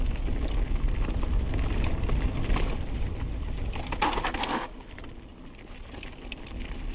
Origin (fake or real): real